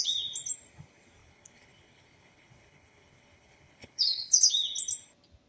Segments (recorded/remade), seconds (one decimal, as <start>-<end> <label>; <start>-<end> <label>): 0.0-1.2 recorded; 1.2-4.5 remade; 4.5-5.5 recorded